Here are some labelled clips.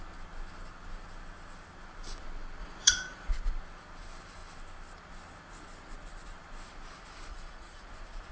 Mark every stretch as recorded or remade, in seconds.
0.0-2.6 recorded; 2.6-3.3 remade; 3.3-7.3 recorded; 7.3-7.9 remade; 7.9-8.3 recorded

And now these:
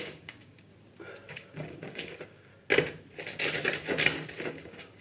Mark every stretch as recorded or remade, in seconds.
0.0-0.7 remade; 0.7-1.3 recorded; 1.3-2.5 remade; 2.5-4.5 recorded; 4.5-5.0 remade

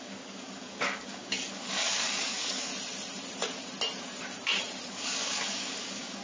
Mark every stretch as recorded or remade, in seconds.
0.0-2.7 remade; 2.7-4.9 recorded; 4.9-6.2 remade